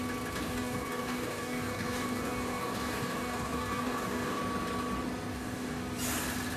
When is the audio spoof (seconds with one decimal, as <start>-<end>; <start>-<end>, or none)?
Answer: 0.4-4.4; 5.3-5.8